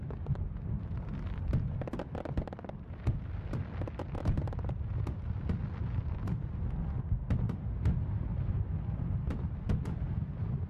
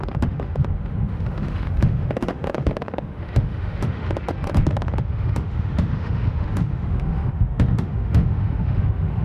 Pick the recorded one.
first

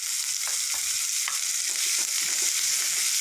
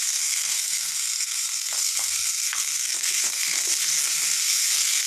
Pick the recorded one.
first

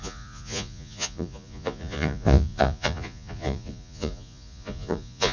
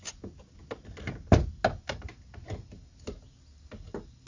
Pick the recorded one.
second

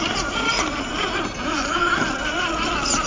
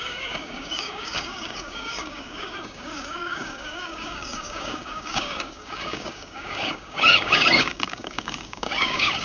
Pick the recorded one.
first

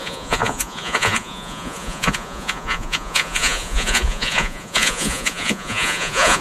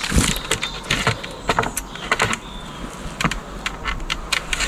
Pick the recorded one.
second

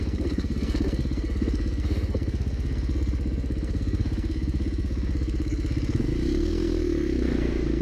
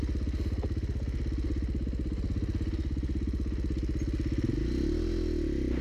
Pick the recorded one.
second